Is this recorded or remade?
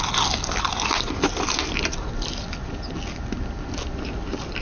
recorded